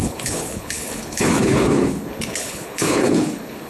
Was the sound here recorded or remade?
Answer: remade